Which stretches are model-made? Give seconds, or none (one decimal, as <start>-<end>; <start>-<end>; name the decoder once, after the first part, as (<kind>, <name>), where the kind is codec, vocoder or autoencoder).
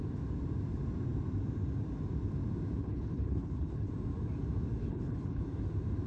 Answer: 2.8-3.9 (codec, HILCodec); 4.8-5.4